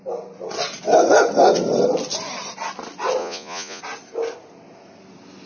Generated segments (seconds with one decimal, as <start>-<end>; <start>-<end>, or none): 3.2-3.8